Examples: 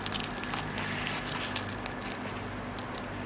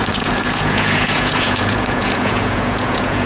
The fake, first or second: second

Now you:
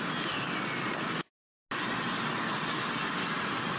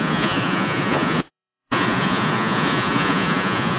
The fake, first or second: second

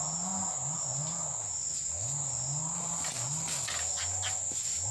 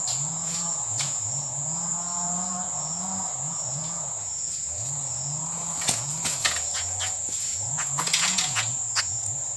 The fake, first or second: second